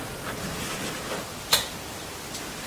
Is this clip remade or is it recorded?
recorded